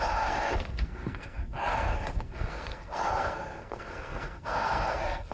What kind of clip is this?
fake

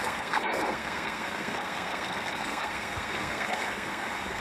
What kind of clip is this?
fake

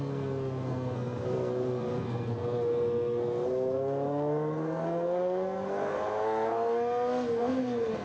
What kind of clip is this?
fake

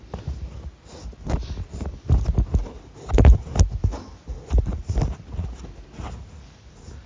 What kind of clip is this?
real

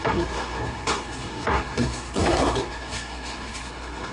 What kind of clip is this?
fake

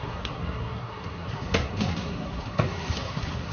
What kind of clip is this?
fake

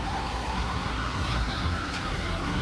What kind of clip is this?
fake